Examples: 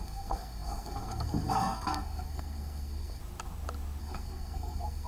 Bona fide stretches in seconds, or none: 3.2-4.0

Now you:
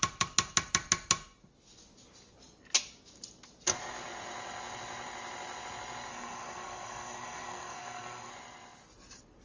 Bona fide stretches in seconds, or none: 0.0-6.1; 8.3-9.4

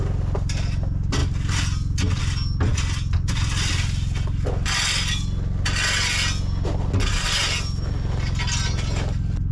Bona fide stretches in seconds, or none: 0.0-9.5

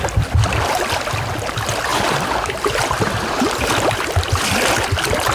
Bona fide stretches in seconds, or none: 0.0-1.9; 3.7-5.3

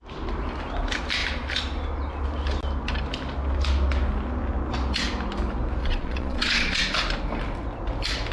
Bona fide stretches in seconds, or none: 0.0-5.8; 6.8-8.3

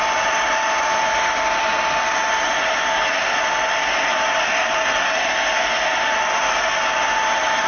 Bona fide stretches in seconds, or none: 0.0-7.7

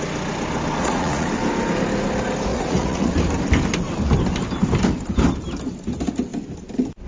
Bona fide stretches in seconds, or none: 0.0-0.8; 1.3-2.5; 3.1-7.1

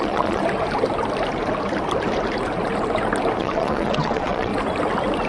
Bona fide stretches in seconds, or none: 0.4-3.4; 4.5-5.3